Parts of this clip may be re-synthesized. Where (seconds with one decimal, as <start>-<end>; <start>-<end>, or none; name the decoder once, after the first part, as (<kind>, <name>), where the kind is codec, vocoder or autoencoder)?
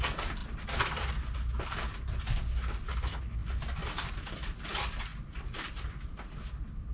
none